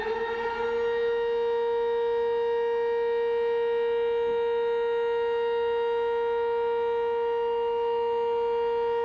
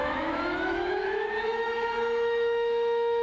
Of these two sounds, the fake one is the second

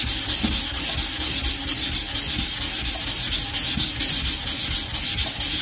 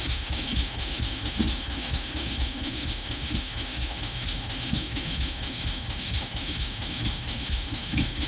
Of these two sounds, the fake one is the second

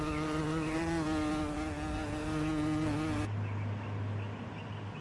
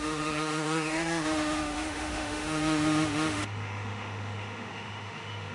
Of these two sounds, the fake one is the second